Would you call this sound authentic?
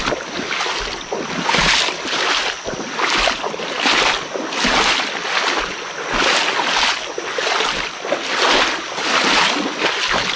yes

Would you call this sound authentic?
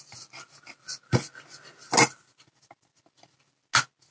yes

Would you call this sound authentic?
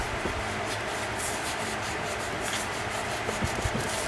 no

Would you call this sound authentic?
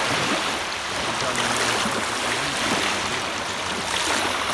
yes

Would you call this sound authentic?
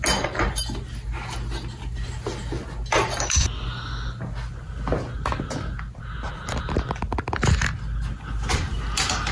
yes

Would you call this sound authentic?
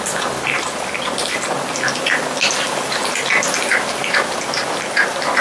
yes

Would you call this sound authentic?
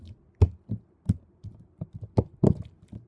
yes